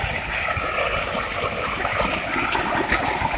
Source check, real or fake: real